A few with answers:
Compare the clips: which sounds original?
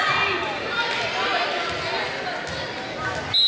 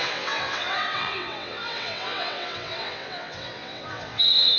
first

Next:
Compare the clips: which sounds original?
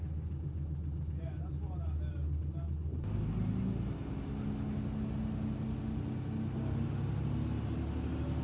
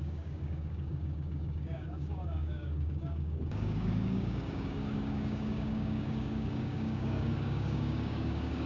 first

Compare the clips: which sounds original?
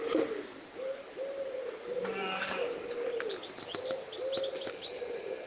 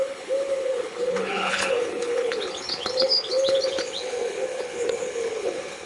first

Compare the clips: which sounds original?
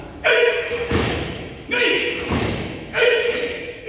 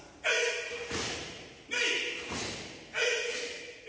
second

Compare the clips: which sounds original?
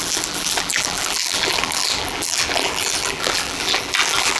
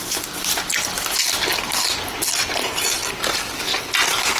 second